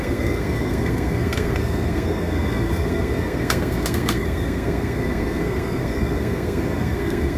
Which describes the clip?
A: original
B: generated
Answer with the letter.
B